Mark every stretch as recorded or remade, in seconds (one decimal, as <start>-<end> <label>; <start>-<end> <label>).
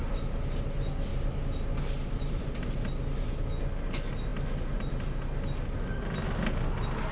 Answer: 0.0-1.1 recorded; 1.1-3.0 remade; 3.0-7.1 recorded